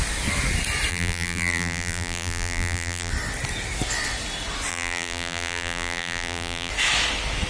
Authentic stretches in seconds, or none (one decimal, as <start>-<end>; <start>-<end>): 0.0-0.9; 3.1-4.7; 6.7-7.5